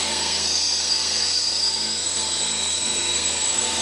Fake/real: fake